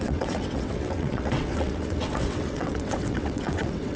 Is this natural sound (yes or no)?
no